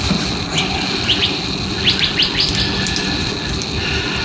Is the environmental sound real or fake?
real